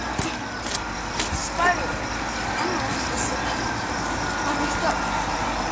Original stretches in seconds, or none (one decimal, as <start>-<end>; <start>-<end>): 0.0-5.7